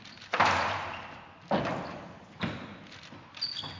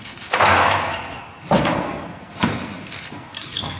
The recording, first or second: first